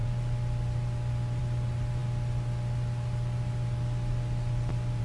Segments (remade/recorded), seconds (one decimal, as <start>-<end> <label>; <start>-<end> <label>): 0.0-5.0 recorded